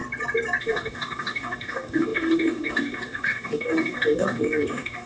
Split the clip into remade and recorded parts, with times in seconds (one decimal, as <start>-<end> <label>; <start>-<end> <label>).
0.0-0.6 recorded; 0.6-5.1 remade